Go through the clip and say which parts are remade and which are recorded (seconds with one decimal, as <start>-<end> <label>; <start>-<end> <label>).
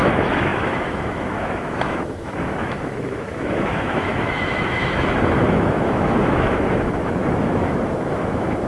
0.0-8.7 remade